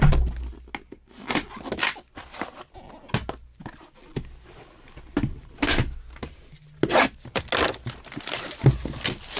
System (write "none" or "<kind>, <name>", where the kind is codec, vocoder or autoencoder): none